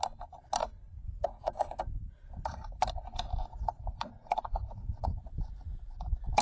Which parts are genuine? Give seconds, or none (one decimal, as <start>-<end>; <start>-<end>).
0.0-0.6; 1.8-3.4; 5.3-6.4